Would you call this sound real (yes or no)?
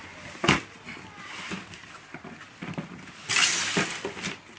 yes